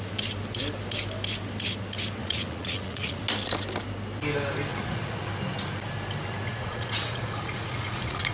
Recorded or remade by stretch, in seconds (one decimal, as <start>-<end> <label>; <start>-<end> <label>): 0.0-2.2 recorded; 2.2-3.2 remade; 3.2-4.7 recorded; 4.7-5.3 remade; 5.3-6.5 recorded; 6.5-8.3 remade